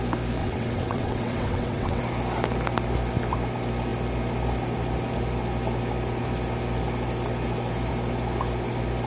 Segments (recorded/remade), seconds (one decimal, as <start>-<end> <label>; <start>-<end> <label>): 0.0-0.4 recorded; 0.4-2.0 remade; 2.0-9.1 recorded